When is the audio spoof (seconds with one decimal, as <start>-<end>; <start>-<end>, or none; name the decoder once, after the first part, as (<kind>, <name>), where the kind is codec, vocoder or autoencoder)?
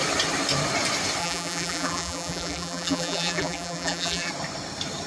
1.2-4.3 (vocoder, BigVGAN v2)